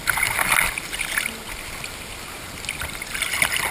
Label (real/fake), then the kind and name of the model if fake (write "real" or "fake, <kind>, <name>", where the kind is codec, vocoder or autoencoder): real